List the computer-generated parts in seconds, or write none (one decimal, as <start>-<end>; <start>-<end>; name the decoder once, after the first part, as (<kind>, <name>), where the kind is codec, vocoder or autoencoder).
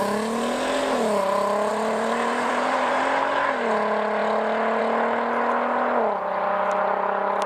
1.7-3.0 (vocoder, BigVGAN v2)